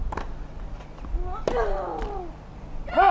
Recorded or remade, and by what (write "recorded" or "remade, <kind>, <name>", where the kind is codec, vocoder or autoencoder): recorded